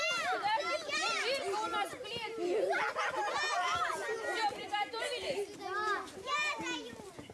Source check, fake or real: real